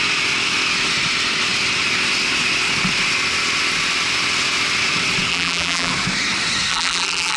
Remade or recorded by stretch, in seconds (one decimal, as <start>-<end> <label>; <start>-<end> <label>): 0.0-5.3 recorded; 5.3-5.9 remade; 5.9-6.7 recorded; 6.7-7.4 remade